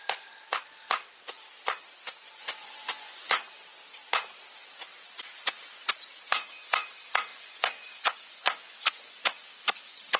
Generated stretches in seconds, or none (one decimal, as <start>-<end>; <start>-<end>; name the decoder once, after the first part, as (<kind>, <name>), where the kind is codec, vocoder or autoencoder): 2.4-3.3 (vocoder, Vocos); 7.3-9.1